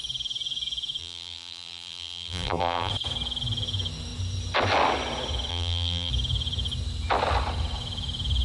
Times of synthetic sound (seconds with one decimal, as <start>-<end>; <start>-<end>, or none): 1.0-2.9; 5.5-6.1

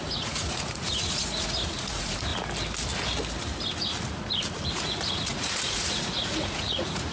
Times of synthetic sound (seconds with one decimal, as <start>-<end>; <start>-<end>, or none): 0.0-2.3; 4.7-7.1

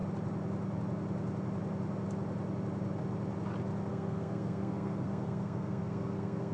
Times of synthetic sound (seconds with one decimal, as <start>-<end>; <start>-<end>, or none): 3.9-6.5

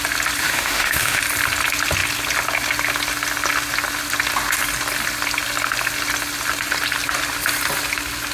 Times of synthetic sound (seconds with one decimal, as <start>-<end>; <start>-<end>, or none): 0.4-1.2

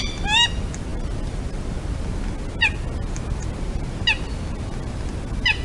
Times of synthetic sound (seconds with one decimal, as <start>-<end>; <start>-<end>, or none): none

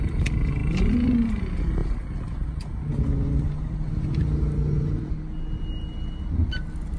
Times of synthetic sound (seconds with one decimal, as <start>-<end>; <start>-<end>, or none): none